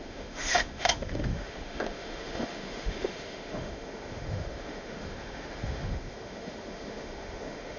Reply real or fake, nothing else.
fake